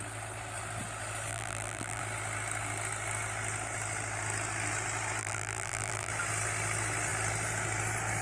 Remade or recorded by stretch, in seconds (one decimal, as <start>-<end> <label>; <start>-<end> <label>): 0.0-1.3 recorded; 1.3-2.0 remade; 2.0-5.2 recorded; 5.2-6.1 remade; 6.1-8.2 recorded